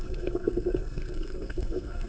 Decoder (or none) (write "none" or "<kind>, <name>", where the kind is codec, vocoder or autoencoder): codec, SNAC